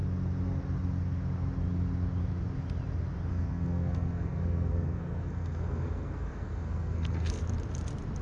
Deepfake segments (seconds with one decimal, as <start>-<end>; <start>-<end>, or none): 3.3-7.4